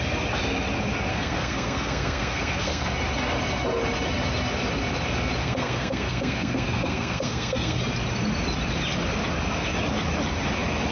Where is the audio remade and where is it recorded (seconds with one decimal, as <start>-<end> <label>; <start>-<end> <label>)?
0.0-1.1 recorded; 1.1-2.9 remade; 2.9-5.4 recorded; 5.4-7.8 remade; 7.8-10.9 recorded